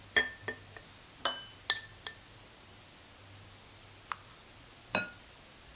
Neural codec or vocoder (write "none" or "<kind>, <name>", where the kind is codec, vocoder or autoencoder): none